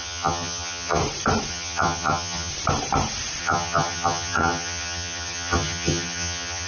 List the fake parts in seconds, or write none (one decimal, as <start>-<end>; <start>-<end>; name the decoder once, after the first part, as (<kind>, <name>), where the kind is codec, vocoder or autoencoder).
0.0-1.0 (vocoder, HiFi-GAN); 1.5-2.5; 3.4-6.7